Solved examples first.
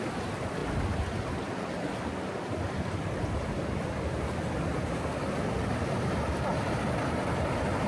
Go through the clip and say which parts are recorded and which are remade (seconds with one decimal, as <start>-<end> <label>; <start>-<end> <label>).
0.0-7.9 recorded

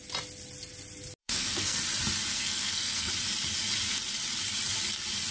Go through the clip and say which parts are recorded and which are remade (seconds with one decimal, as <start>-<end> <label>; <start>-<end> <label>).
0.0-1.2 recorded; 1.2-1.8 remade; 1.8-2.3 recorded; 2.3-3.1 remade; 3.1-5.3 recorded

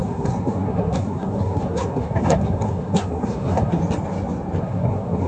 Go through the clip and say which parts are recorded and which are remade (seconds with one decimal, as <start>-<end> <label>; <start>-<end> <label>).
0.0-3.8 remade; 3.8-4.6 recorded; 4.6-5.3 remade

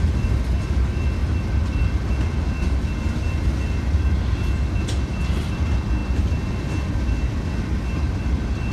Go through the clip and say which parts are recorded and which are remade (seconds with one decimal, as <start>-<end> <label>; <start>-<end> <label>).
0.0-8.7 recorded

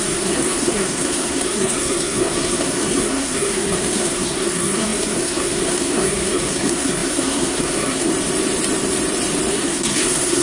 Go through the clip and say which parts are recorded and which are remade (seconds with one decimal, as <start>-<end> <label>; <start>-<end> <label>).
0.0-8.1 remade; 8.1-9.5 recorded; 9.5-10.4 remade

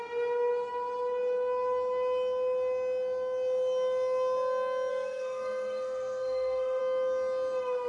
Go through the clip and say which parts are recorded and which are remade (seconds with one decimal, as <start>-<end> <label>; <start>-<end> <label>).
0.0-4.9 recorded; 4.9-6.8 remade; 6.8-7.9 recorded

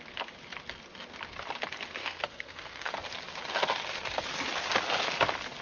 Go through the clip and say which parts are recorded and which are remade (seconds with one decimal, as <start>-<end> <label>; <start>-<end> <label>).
0.0-2.0 recorded; 2.0-2.9 remade; 2.9-5.6 recorded

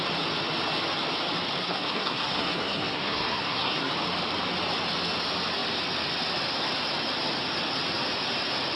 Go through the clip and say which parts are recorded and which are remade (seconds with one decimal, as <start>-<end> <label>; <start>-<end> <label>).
0.0-1.6 recorded; 1.6-3.9 remade; 3.9-8.8 recorded